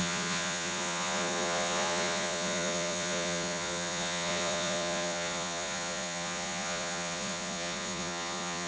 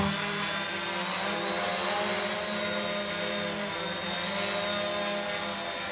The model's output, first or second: first